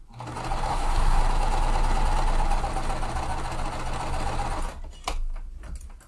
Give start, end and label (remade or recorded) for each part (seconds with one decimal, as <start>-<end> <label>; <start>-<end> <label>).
0.0-0.7 recorded; 0.7-1.2 remade; 1.2-6.1 recorded